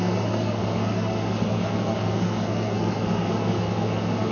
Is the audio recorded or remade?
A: remade